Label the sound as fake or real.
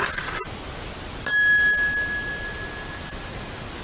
real